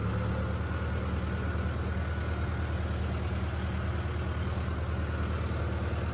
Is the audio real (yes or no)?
yes